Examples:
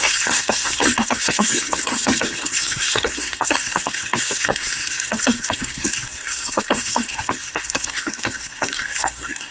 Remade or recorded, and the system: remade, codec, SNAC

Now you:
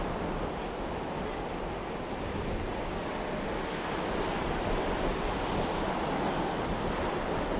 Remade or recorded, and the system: recorded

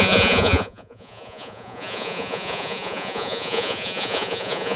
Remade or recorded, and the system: remade, vocoder, Vocos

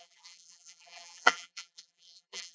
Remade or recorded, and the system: remade, vocoder, BigVGAN v2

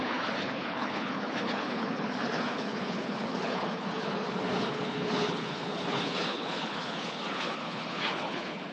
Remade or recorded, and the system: remade, codec, HILCodec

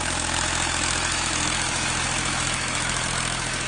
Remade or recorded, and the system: remade, autoencoder, DAC-VAE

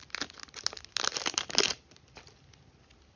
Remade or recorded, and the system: recorded